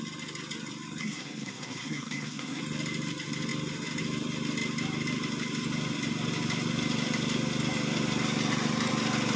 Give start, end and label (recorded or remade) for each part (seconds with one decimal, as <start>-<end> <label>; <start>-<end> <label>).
0.0-1.0 recorded; 1.0-2.6 remade; 2.6-9.4 recorded